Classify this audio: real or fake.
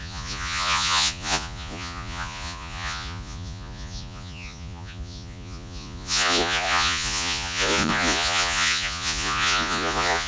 fake